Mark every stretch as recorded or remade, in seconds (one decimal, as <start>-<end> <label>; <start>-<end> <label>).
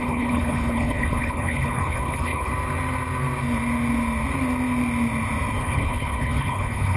0.0-2.5 remade; 2.5-5.6 recorded; 5.6-7.0 remade